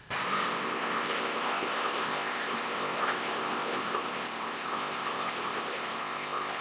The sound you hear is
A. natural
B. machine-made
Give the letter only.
B